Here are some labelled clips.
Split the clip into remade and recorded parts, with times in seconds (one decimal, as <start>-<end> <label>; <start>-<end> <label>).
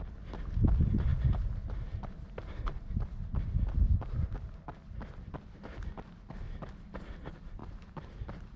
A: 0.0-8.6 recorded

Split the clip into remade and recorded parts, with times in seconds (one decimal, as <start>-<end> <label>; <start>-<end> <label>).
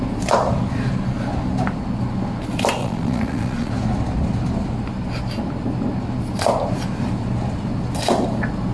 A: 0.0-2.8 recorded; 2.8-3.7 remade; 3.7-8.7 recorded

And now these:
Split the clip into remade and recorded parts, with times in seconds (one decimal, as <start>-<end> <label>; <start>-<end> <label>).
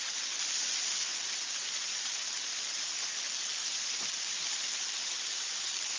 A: 0.0-1.1 recorded; 1.1-2.8 remade; 2.8-6.0 recorded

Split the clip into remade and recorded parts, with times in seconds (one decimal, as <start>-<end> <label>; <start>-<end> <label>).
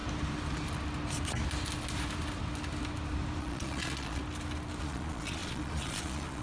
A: 0.0-3.4 recorded; 3.4-4.2 remade; 4.2-4.8 recorded; 4.8-6.4 remade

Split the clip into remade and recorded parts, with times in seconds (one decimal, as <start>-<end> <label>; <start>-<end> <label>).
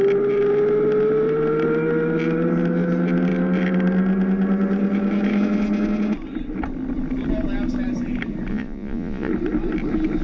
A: 0.0-8.5 recorded; 8.5-9.3 remade; 9.3-10.2 recorded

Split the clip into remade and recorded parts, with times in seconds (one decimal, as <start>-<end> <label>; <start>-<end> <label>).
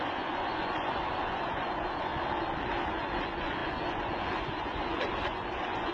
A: 0.0-2.1 remade; 2.1-2.9 recorded; 2.9-5.9 remade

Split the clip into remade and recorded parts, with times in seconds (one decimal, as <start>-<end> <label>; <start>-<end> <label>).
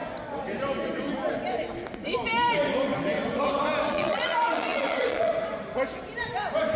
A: 0.0-3.9 recorded; 3.9-5.3 remade; 5.3-6.8 recorded